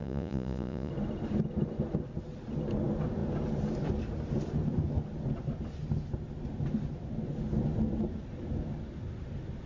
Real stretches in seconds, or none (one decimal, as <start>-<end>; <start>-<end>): 0.9-9.7